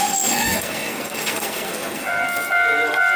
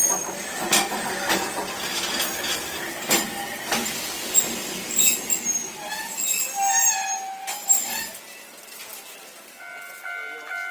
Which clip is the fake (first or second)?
first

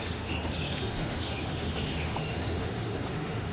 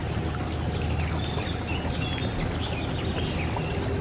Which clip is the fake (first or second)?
first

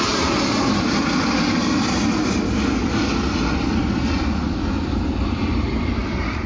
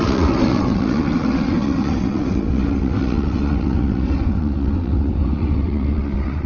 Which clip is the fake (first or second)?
second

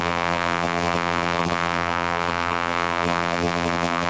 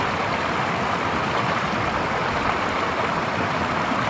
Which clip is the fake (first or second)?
first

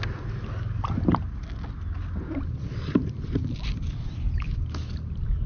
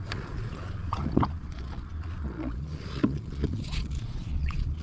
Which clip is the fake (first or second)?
second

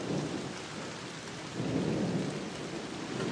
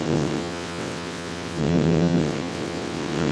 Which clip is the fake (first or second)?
second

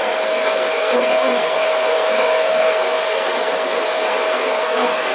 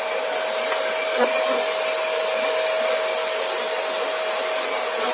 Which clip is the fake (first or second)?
first